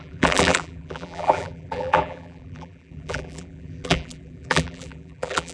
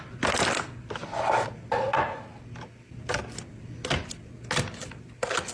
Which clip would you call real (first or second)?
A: second